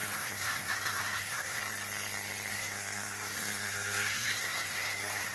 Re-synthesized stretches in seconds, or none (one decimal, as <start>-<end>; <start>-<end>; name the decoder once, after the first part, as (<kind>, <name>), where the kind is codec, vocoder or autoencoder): 0.0-1.6 (codec, SNAC); 2.5-5.3